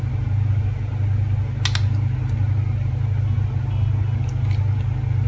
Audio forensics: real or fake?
real